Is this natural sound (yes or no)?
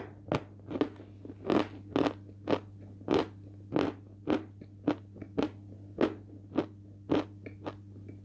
yes